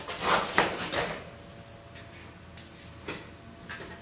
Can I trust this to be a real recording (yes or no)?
yes